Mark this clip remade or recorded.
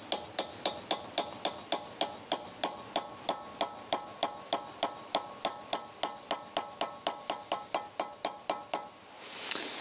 recorded